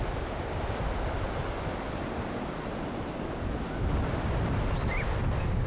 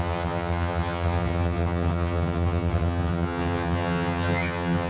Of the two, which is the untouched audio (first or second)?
first